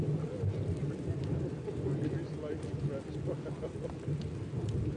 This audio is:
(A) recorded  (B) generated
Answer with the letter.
A